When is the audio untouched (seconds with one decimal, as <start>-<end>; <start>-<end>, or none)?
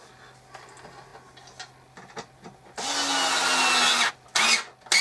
0.0-5.0